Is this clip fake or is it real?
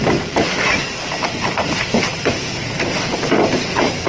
real